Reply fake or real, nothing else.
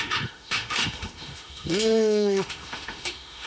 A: fake